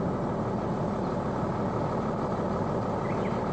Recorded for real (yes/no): yes